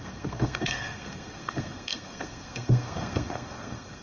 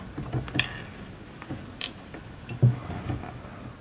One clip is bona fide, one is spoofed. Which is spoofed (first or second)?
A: first